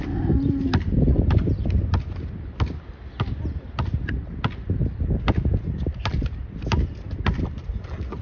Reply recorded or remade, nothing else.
recorded